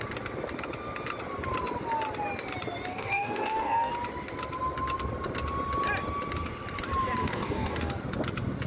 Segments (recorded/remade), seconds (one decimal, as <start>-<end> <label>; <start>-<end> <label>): 0.0-2.9 recorded; 2.9-3.9 remade; 3.9-7.2 recorded; 7.2-7.9 remade; 7.9-8.7 recorded

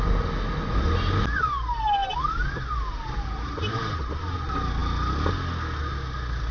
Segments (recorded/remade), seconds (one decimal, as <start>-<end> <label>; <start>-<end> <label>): 0.0-6.5 recorded

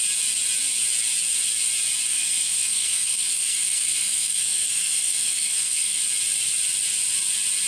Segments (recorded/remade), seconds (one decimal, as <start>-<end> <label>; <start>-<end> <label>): 0.0-2.1 recorded; 2.1-6.0 remade; 6.0-7.7 recorded

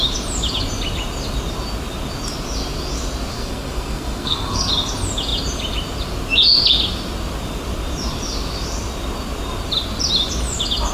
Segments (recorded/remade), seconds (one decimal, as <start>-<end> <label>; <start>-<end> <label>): 0.0-3.3 recorded; 3.3-4.7 remade; 4.7-10.9 recorded

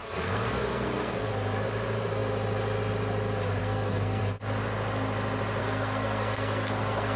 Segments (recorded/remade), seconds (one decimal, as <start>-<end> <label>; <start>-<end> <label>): 0.0-1.3 remade; 1.3-3.6 recorded; 3.6-4.2 remade; 4.2-5.6 recorded; 5.6-7.2 remade

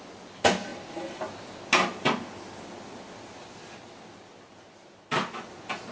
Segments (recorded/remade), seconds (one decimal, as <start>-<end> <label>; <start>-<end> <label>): 0.0-5.9 recorded

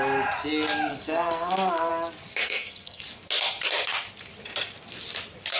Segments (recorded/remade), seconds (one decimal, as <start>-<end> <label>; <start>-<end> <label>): 0.0-0.9 recorded; 0.9-1.9 remade; 1.9-2.4 recorded; 2.4-3.0 remade; 3.0-5.6 recorded